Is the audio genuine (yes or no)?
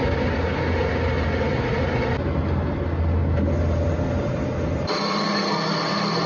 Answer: yes